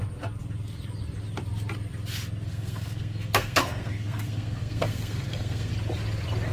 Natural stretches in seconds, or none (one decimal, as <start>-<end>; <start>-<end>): 0.0-2.5; 5.7-6.5